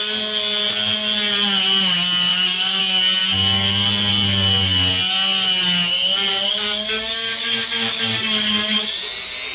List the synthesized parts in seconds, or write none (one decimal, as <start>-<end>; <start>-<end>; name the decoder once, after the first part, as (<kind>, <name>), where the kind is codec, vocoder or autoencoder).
2.3-2.8 (codec, DAC); 6.3-8.9

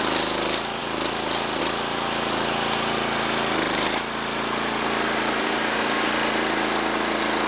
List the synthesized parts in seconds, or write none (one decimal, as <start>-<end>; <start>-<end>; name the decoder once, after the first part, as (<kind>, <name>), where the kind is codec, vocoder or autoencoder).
5.4-6.1 (codec, DAC)

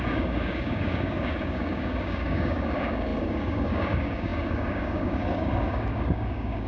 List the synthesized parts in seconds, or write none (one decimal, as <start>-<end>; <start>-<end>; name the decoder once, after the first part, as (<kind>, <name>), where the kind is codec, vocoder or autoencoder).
0.0-6.7 (codec, DAC)

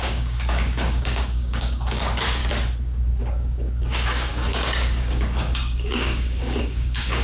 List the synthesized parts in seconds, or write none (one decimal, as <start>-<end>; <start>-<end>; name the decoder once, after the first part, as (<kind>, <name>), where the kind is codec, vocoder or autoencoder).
0.0-2.4 (codec, DAC); 3.2-7.2

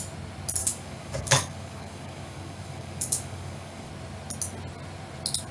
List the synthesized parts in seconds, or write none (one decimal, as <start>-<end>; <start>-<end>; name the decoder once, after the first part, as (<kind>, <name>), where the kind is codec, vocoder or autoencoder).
0.6-3.9 (codec, DAC)

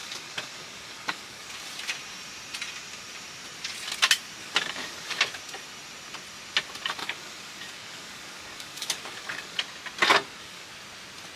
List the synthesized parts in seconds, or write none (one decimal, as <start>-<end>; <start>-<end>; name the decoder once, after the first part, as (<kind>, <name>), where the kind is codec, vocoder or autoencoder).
0.0-1.5 (codec, DAC); 4.4-5.2; 7.0-9.6; 10.1-10.7